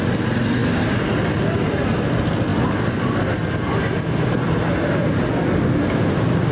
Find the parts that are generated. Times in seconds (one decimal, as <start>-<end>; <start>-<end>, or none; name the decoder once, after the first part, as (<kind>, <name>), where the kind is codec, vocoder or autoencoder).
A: none